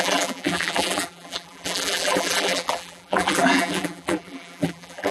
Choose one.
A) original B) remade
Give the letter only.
B